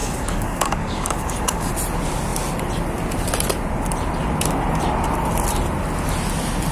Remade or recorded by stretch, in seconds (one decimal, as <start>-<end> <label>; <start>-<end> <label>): 0.0-1.7 remade; 1.7-6.7 recorded